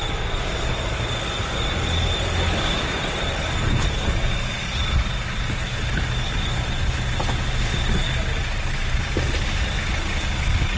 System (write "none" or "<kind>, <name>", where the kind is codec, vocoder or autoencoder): none